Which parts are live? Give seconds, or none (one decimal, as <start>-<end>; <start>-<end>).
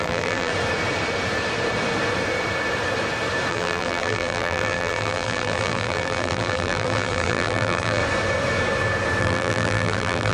0.5-3.5; 8.0-9.2